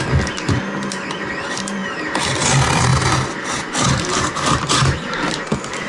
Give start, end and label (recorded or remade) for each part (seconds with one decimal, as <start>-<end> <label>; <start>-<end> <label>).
0.0-5.9 recorded